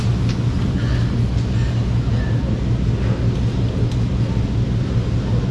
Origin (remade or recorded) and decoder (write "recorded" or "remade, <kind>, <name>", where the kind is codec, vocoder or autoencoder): recorded